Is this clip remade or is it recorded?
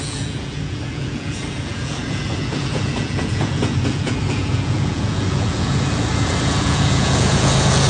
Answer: remade